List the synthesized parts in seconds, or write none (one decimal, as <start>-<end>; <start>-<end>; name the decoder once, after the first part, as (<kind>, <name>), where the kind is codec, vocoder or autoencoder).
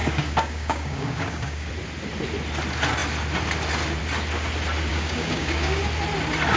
0.0-1.7 (codec, DAC); 4.9-5.8